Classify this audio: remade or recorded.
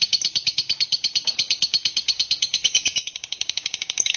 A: remade